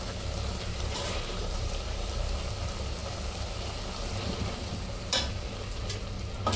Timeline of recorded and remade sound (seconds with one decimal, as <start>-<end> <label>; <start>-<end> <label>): 0.0-0.7 recorded; 0.7-2.1 remade; 2.1-6.6 recorded

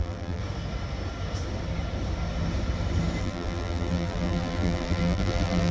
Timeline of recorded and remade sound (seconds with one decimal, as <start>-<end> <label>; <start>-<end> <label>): 0.0-0.4 remade; 0.4-3.2 recorded; 3.2-5.7 remade

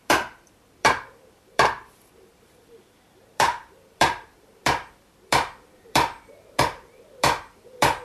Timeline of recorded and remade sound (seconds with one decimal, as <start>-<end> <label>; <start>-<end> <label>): 0.0-8.0 remade

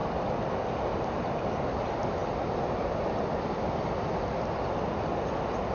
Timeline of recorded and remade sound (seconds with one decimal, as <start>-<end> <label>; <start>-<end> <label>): 0.0-5.7 recorded

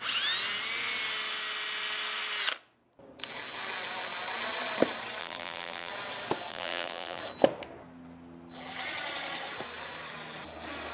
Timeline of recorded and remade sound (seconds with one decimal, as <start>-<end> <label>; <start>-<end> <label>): 0.0-5.2 recorded; 5.2-5.9 remade; 5.9-6.5 recorded; 6.5-7.2 remade; 7.2-10.9 recorded

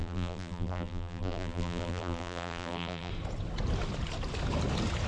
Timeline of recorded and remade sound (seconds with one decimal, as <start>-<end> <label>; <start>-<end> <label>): 0.0-3.1 remade; 3.1-5.1 recorded

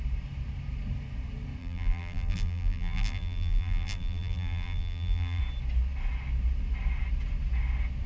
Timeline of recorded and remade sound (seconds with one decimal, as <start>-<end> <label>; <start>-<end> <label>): 0.0-1.6 recorded; 1.6-5.4 remade; 5.4-8.1 recorded